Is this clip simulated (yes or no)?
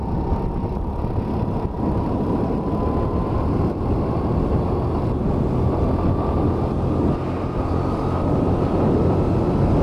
no